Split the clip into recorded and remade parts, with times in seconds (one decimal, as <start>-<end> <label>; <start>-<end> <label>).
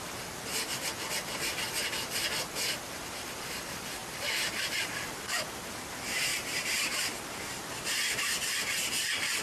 0.0-4.0 recorded; 4.0-5.4 remade; 5.4-6.3 recorded; 6.3-7.4 remade; 7.4-9.4 recorded